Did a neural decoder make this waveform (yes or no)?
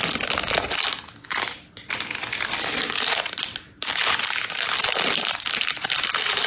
no